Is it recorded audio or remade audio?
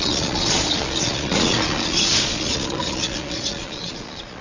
remade